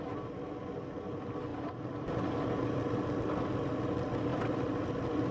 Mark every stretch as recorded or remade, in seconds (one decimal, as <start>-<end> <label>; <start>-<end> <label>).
0.0-5.3 recorded